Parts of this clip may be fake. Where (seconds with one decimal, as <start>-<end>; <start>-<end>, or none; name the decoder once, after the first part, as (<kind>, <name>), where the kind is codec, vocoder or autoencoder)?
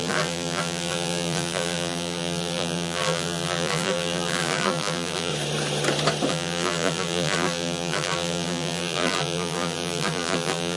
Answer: 0.0-5.3 (vocoder, BigVGAN v2); 6.3-10.8